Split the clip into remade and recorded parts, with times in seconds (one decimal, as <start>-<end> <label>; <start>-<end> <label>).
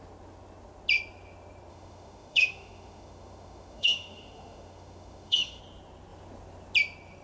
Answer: 0.0-1.7 recorded; 1.7-5.6 remade; 5.6-7.2 recorded